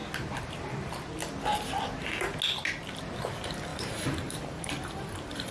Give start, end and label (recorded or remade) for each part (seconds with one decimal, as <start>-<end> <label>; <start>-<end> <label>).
0.0-3.7 recorded; 3.7-5.5 remade